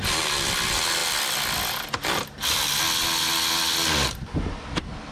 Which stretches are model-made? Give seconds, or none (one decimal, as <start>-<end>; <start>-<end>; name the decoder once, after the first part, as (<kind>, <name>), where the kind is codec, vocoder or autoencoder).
none